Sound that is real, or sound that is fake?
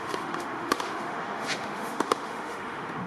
fake